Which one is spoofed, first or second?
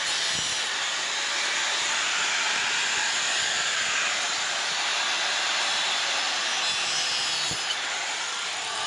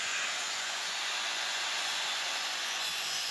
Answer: second